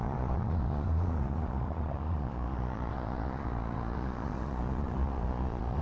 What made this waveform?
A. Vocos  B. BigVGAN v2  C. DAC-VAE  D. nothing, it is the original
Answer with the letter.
A